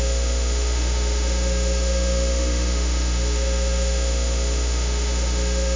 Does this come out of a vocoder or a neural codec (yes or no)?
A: yes